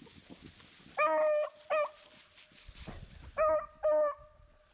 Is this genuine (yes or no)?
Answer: yes